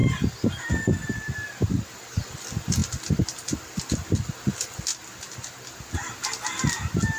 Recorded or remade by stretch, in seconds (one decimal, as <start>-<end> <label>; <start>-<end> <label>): 0.0-7.2 recorded